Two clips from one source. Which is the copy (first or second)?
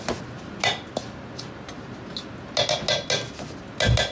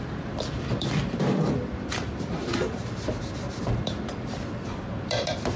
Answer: second